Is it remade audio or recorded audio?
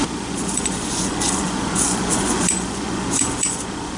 remade